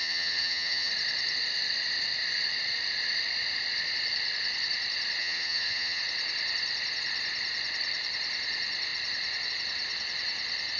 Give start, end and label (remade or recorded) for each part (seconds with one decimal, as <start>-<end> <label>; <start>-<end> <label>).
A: 0.0-0.9 remade; 0.9-5.2 recorded; 5.2-6.0 remade; 6.0-10.8 recorded